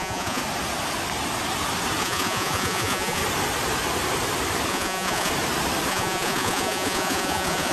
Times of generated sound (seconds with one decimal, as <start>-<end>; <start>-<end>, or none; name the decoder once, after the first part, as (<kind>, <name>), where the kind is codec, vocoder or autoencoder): 0.0-0.4 (vocoder, Vocos); 2.0-3.2; 4.7-5.3; 5.9-7.7